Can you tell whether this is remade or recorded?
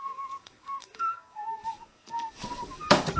remade